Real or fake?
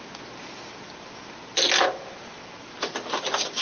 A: real